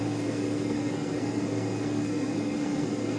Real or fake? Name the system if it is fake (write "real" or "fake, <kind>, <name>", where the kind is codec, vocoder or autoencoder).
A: fake, codec, SNAC